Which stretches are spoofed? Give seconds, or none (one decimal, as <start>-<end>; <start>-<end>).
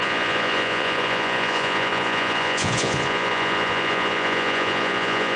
0.0-5.4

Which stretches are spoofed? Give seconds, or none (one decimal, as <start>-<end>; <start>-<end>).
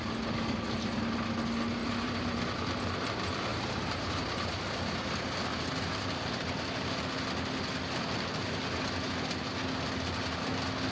1.8-2.4; 3.5-4.4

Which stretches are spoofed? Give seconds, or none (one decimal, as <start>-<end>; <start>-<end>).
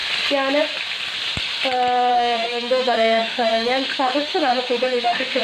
2.1-5.4